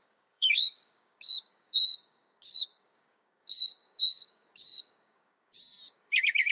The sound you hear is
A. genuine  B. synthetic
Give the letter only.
B